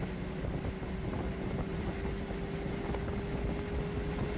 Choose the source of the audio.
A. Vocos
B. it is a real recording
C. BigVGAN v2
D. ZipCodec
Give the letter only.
B